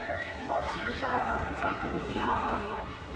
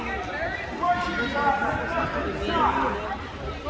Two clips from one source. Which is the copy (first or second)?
first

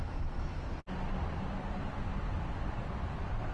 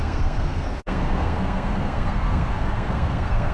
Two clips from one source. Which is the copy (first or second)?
second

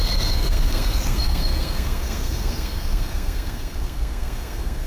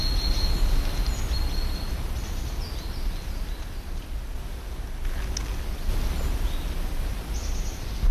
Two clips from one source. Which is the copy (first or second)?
first